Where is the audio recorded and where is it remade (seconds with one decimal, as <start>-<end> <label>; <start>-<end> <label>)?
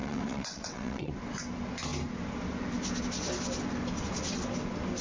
0.0-1.1 remade; 1.1-5.0 recorded